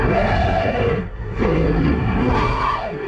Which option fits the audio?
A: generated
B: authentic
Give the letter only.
A